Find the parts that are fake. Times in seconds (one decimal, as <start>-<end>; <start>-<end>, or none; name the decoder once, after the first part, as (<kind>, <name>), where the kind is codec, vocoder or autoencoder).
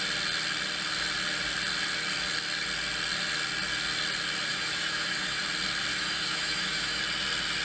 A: 4.5-5.4 (autoencoder, DAC-VAE); 5.9-7.0